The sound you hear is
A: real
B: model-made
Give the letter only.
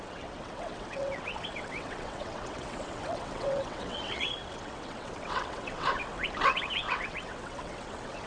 B